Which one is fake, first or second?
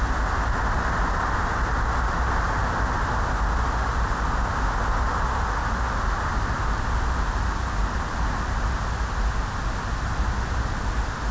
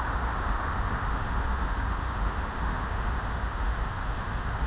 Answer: second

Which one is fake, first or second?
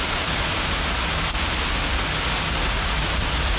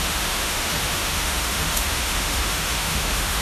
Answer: second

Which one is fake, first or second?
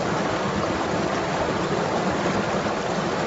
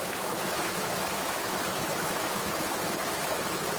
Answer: second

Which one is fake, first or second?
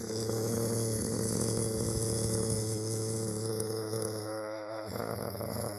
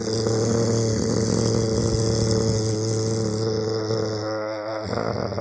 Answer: first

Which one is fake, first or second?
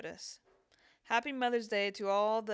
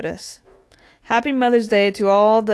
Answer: second